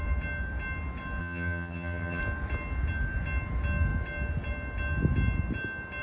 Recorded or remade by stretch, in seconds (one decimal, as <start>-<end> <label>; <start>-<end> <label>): 0.0-1.2 recorded; 1.2-2.2 remade; 2.2-6.0 recorded